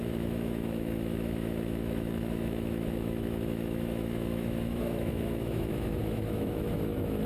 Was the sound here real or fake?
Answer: fake